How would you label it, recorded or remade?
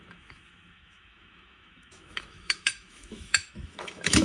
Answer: remade